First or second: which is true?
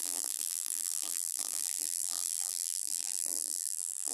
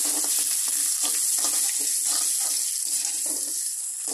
second